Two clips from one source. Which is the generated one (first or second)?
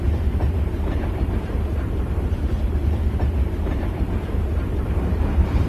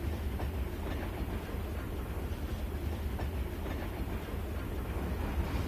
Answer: first